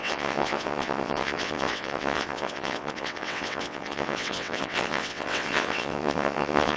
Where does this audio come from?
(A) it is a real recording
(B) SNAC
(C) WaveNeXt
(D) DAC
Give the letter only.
C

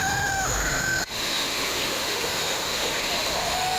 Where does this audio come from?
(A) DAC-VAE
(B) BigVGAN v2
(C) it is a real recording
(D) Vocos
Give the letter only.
A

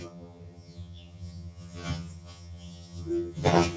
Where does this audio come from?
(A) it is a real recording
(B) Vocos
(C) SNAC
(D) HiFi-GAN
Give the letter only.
D